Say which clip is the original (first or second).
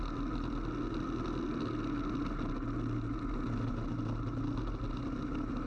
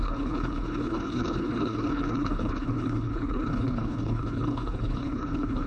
first